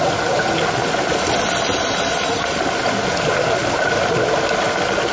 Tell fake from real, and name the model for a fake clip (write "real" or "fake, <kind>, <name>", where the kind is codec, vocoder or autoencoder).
real